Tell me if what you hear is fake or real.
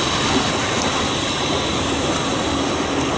real